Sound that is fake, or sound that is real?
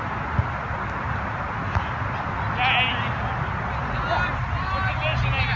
real